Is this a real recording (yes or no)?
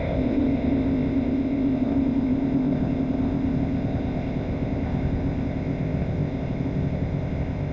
no